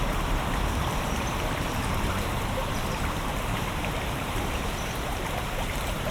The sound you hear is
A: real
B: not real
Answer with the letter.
B